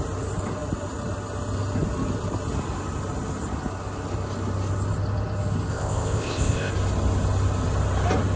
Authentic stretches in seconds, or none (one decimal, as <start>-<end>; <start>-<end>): 0.0-5.7; 6.7-8.4